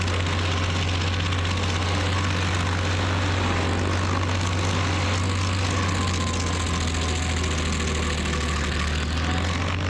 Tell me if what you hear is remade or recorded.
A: recorded